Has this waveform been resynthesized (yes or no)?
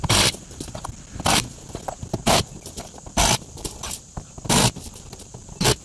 yes